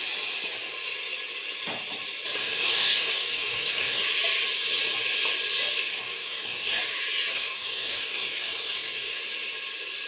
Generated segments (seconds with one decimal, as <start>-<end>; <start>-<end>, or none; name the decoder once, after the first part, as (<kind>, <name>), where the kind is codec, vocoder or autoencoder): 2.4-4.0 (codec, DAC); 6.0-6.8; 7.3-9.2